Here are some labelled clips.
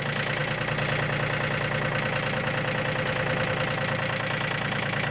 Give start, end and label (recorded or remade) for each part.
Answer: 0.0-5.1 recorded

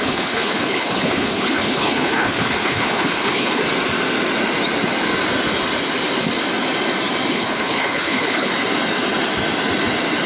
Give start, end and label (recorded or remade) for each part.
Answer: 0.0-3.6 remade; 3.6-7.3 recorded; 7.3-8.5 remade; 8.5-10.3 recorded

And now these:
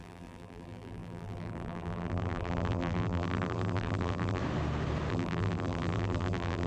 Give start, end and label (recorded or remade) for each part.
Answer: 0.0-4.4 remade; 4.4-5.1 recorded; 5.1-6.7 remade

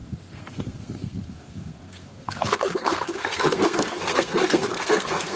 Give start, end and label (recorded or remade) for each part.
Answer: 0.0-5.4 remade

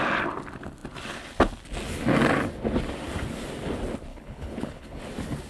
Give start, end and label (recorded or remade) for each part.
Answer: 0.0-4.1 recorded; 4.1-5.0 remade; 5.0-5.5 recorded

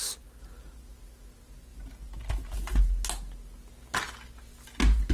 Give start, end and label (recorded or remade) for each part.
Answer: 0.0-5.1 recorded

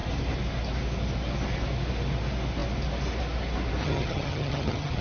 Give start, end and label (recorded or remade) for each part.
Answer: 0.0-3.8 recorded; 3.8-5.0 remade